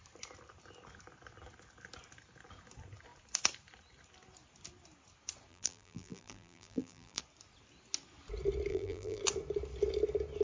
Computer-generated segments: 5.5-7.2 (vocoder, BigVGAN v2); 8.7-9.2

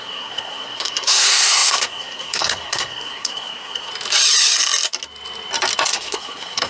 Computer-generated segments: 0.0-3.9 (codec, SNAC); 5.9-6.7

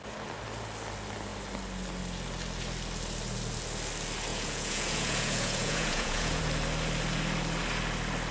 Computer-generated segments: 4.3-6.4 (vocoder, Vocos)

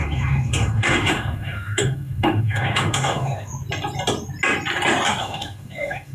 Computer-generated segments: 0.0-3.5 (autoencoder, DAC-VAE); 5.2-6.1

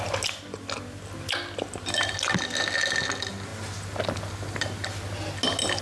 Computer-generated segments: none